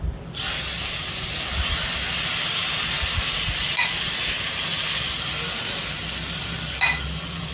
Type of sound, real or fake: real